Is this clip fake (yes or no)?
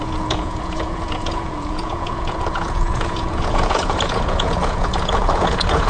yes